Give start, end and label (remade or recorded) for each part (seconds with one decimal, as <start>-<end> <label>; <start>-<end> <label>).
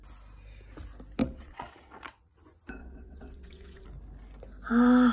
0.0-1.2 recorded; 1.2-2.4 remade; 2.4-2.8 recorded; 2.8-3.8 remade; 3.8-5.1 recorded